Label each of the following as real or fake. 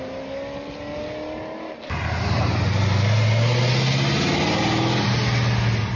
real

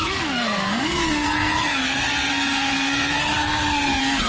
fake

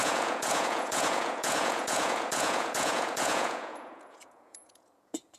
fake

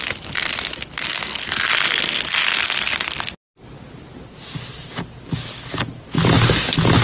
real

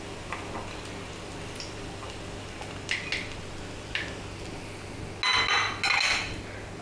real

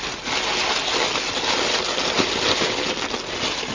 real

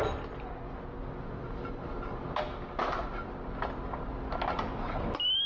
real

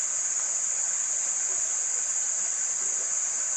real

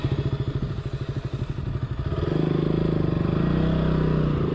real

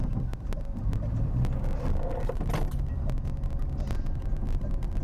real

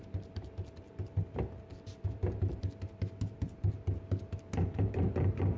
real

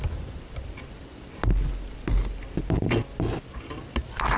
real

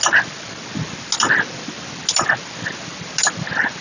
real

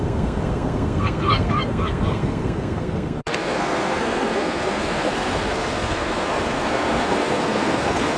fake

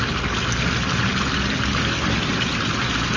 real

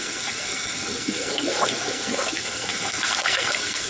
fake